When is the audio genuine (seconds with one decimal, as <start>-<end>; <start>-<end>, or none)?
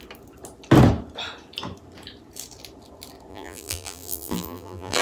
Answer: 0.0-3.3